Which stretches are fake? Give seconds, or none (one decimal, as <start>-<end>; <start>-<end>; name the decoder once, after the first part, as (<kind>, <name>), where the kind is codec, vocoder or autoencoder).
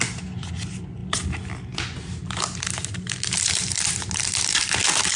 none